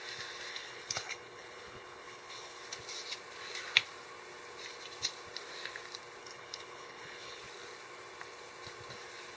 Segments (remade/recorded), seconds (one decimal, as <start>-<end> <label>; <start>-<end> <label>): 0.0-0.5 recorded; 0.5-2.6 remade; 2.6-6.2 recorded; 6.2-7.4 remade; 7.4-9.4 recorded